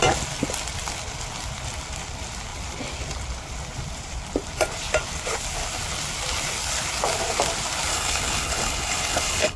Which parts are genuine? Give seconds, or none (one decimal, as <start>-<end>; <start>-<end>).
0.0-7.9